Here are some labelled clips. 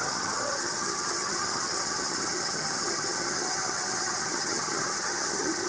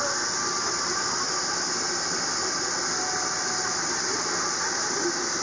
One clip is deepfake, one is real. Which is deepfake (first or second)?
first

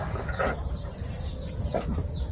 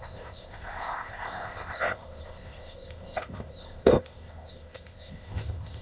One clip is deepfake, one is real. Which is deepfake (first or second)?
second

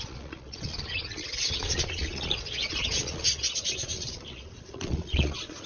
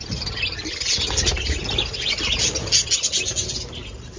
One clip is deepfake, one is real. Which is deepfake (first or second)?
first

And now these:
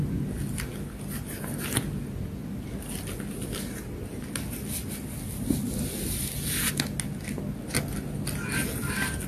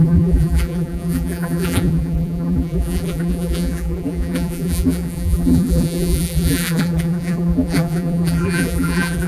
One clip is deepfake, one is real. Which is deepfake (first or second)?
second